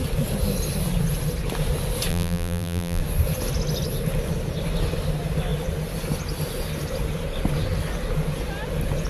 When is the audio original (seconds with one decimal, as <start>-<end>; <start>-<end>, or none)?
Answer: 0.0-2.1; 3.0-9.1

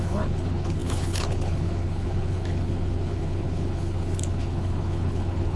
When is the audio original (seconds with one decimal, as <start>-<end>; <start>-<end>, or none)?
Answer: none

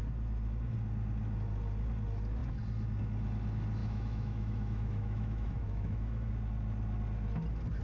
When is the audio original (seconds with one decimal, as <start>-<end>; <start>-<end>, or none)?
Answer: 0.0-3.8; 6.3-7.8

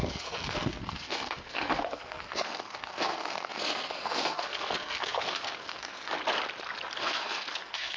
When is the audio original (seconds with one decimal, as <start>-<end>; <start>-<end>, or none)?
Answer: 6.2-7.0

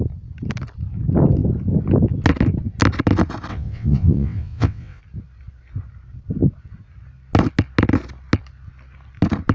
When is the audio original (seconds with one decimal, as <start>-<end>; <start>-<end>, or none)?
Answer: 0.0-3.5; 5.0-9.5